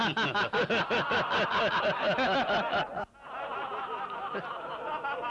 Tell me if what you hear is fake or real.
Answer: real